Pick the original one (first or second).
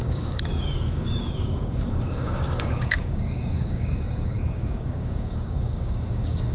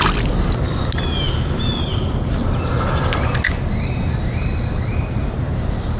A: second